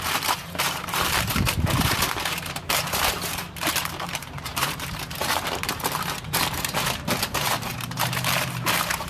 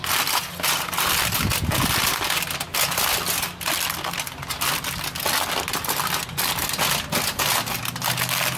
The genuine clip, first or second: second